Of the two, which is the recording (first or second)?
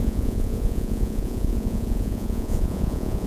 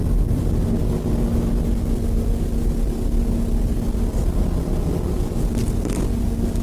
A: second